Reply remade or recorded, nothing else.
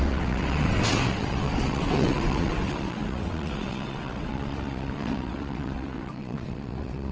remade